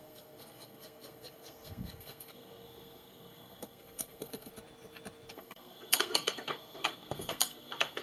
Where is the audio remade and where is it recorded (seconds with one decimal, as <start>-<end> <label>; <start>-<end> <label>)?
0.0-4.5 remade; 4.5-5.3 recorded; 5.3-8.0 remade